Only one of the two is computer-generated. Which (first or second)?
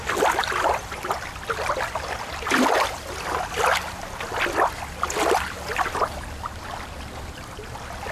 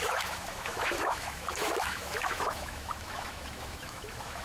second